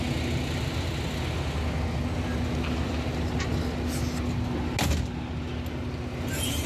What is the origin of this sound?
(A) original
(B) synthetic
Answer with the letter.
A